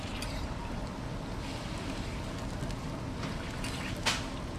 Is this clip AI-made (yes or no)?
no